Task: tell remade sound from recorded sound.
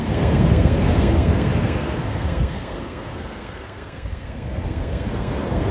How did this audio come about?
remade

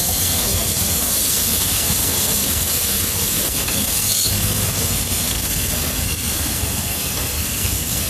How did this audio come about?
remade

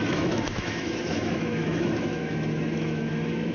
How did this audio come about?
remade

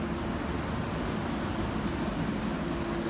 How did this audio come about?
recorded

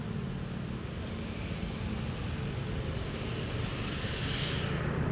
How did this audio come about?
recorded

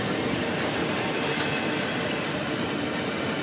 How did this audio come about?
recorded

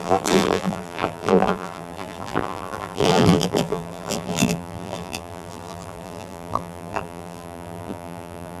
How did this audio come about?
remade